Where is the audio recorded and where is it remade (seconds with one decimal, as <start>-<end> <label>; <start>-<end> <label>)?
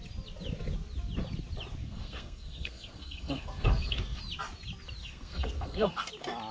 0.0-1.8 recorded; 1.8-4.2 remade; 4.2-5.0 recorded; 5.0-6.1 remade; 6.1-6.5 recorded